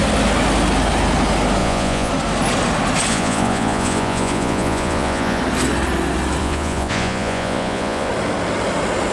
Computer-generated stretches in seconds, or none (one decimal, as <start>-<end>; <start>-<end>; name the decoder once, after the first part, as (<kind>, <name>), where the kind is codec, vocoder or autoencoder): 1.6-2.1 (vocoder, Vocos); 3.1-5.4; 6.4-8.1